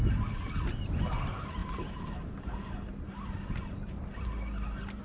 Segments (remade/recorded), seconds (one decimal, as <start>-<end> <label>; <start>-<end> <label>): 0.0-5.0 recorded